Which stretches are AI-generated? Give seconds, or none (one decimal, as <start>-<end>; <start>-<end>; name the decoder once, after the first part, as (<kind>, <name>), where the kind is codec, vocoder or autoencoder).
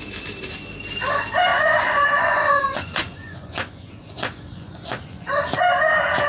1.5-5.3 (vocoder, Vocos)